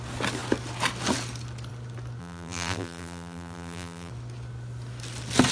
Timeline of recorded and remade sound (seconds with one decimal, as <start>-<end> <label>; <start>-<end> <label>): 0.0-2.2 recorded; 2.2-4.1 remade; 4.1-5.5 recorded